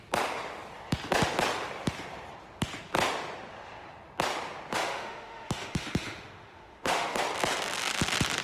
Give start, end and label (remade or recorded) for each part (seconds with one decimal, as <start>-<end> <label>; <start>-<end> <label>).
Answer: 0.0-4.7 recorded; 4.7-7.2 remade; 7.2-8.4 recorded